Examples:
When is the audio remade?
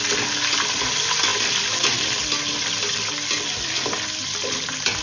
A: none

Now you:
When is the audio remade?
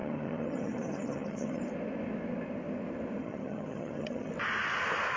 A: 0.0-1.6 (vocoder, HiFi-GAN); 3.2-4.3